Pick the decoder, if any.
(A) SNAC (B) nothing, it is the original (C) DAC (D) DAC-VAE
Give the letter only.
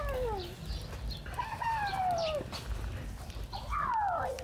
B